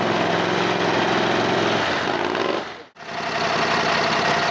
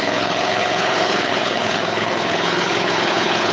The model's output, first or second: second